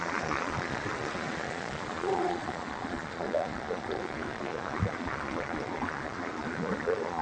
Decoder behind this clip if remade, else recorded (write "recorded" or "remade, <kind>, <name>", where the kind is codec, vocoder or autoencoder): remade, vocoder, Vocos